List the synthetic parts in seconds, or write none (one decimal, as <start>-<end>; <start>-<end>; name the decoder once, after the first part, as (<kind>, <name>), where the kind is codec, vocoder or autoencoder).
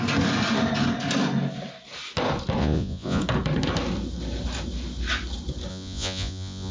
2.6-3.2 (vocoder, Vocos); 5.7-6.7